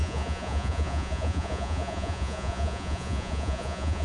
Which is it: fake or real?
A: fake